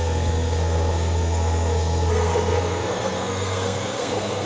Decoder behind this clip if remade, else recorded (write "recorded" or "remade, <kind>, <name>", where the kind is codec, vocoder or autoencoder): remade, codec, SNAC